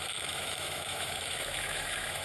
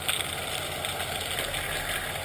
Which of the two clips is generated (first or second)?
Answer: first